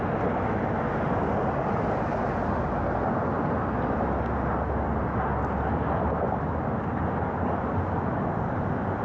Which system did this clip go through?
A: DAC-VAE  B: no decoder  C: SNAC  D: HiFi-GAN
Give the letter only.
B